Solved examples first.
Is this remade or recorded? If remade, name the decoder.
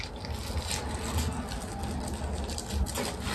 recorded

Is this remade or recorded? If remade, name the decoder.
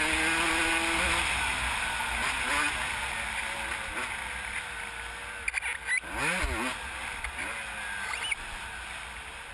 recorded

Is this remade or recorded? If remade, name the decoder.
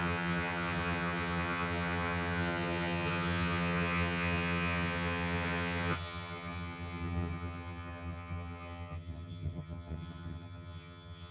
remade, vocoder, HiFi-GAN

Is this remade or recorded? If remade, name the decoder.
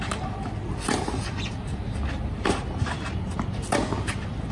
recorded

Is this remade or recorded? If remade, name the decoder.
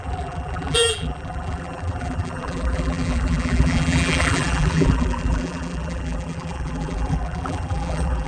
remade, vocoder, BigVGAN v2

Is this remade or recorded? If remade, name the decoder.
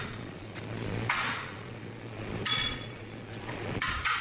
remade, vocoder, Vocos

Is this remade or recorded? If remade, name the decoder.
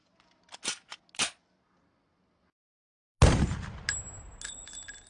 recorded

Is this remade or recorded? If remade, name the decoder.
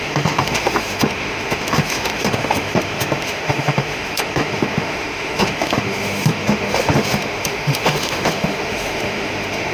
remade, autoencoder, DAC-VAE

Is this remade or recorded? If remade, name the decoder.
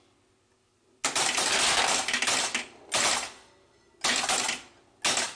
recorded